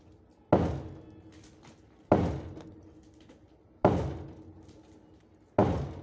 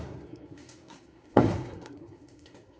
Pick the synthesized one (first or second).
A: second